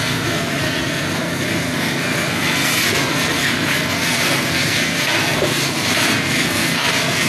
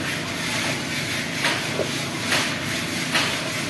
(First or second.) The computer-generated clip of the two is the first